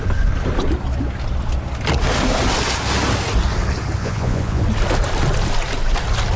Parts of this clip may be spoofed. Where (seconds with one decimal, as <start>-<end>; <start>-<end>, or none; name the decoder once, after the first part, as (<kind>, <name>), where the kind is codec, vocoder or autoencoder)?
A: 4.0-4.6 (vocoder, Vocos)